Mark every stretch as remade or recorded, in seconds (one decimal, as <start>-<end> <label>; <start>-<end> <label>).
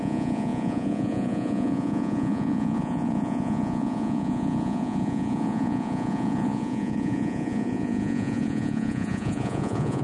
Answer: 0.0-10.0 remade